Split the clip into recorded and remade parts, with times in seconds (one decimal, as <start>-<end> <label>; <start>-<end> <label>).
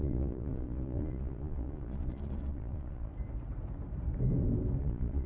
0.0-3.1 remade; 3.1-4.8 recorded; 4.8-5.3 remade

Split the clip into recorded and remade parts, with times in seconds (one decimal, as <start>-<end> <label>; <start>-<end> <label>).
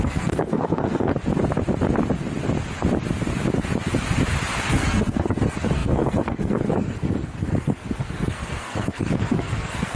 0.0-1.1 remade; 1.1-4.6 recorded; 4.6-10.0 remade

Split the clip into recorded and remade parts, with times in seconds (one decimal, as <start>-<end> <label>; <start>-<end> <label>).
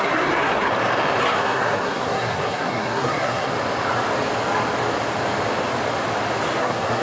0.0-0.7 remade; 0.7-1.2 recorded; 1.2-3.5 remade; 3.5-6.6 recorded; 6.6-7.0 remade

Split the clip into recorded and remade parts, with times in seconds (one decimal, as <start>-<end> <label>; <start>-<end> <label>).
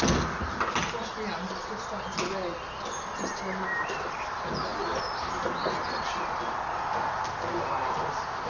0.0-8.5 recorded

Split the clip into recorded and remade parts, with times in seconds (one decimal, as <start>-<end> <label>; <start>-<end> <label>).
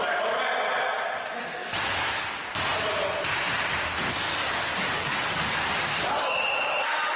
0.0-1.6 recorded; 1.6-2.3 remade; 2.3-4.3 recorded; 4.3-5.7 remade; 5.7-7.2 recorded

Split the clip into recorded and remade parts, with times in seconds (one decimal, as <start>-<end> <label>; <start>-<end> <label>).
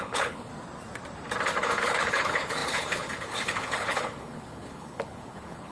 0.0-0.5 remade; 0.5-1.6 recorded; 1.6-5.7 remade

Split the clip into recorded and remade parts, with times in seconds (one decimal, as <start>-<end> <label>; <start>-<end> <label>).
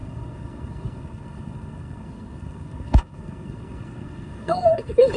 0.0-5.2 remade